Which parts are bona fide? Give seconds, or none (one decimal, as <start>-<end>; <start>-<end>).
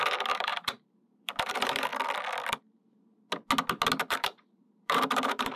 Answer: 1.9-4.0